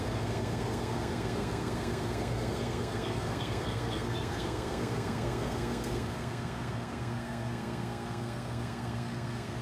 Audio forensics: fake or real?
fake